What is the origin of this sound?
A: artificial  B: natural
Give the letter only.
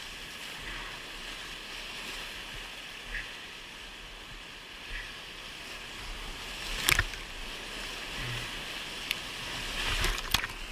B